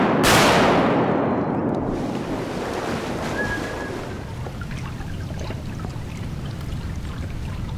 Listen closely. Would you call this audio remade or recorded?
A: recorded